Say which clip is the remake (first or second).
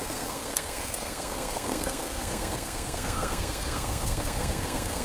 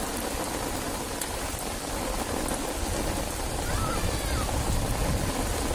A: first